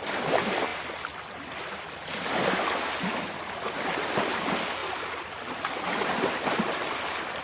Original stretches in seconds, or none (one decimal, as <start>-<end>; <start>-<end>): 0.7-3.3